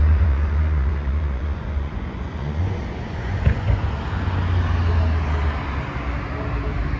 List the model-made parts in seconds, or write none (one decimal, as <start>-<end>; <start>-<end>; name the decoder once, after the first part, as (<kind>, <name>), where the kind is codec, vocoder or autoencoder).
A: 0.0-4.0 (vocoder, Vocos)